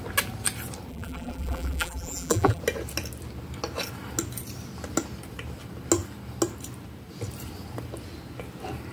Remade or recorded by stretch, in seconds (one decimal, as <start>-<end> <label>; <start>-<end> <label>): 0.0-0.9 recorded; 0.9-2.6 remade; 2.6-8.9 recorded